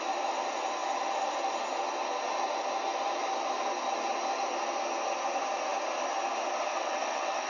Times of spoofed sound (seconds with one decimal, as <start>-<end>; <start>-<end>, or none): 6.7-7.5